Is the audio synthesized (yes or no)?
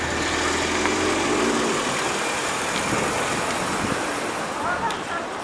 no